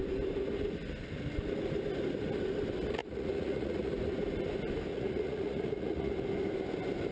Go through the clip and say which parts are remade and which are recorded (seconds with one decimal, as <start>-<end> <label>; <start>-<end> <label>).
0.0-3.0 recorded; 3.0-4.0 remade; 4.0-4.9 recorded; 4.9-6.1 remade; 6.1-7.1 recorded